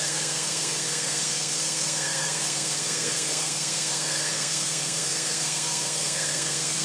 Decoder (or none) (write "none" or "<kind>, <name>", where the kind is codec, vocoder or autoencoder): codec, SNAC